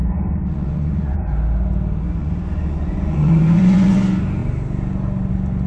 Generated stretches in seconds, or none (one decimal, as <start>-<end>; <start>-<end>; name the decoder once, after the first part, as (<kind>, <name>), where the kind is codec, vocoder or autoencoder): 0.0-1.2 (vocoder, Vocos); 2.2-4.0